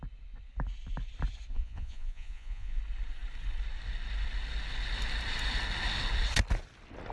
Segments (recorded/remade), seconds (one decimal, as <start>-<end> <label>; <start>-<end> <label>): 0.0-1.5 recorded; 1.5-2.8 remade; 2.8-7.1 recorded